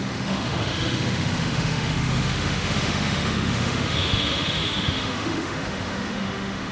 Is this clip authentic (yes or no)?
no